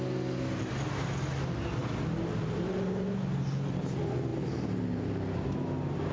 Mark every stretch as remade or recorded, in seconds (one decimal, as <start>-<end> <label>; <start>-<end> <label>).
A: 0.0-6.1 recorded

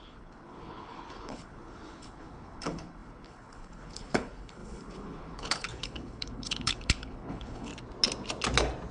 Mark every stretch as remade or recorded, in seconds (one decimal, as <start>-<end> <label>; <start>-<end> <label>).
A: 0.0-7.7 remade; 7.7-8.9 recorded

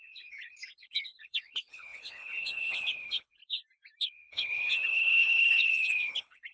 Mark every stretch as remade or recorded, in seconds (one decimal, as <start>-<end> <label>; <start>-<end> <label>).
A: 0.0-3.4 remade; 3.4-4.0 recorded; 4.0-6.5 remade